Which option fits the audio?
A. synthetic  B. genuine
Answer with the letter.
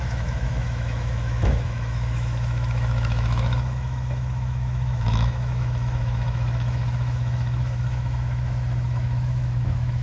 A